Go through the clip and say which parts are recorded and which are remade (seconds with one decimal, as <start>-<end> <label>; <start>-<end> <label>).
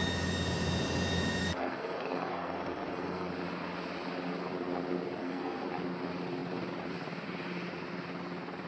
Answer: 0.0-1.4 recorded; 1.4-3.3 remade; 3.3-5.2 recorded; 5.2-5.7 remade; 5.7-8.7 recorded